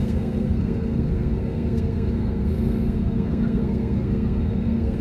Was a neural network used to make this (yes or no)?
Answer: yes